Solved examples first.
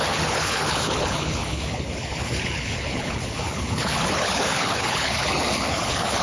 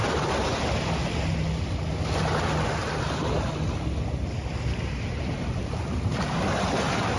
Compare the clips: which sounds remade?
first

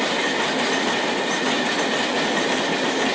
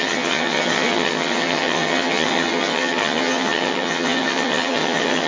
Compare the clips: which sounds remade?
second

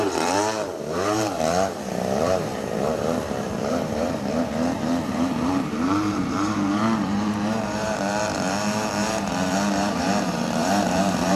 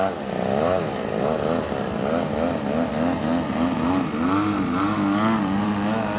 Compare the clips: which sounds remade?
first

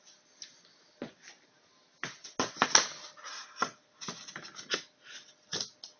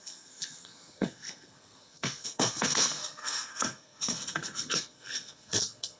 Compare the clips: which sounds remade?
second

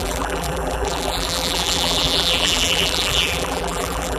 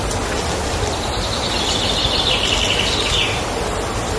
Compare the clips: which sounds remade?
first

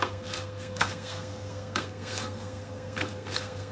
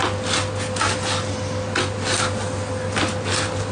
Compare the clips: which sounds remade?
first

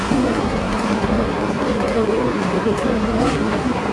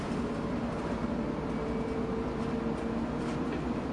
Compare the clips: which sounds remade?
first